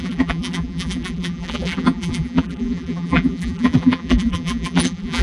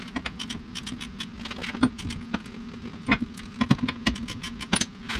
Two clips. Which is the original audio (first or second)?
second